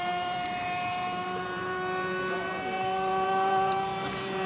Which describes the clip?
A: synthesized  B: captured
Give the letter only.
A